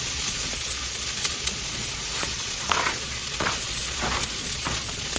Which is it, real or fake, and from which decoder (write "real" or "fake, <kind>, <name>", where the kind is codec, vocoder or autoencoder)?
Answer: fake, vocoder, Vocos